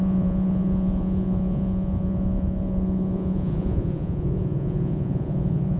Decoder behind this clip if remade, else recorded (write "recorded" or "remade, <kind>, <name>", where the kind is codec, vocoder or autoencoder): remade, vocoder, Vocos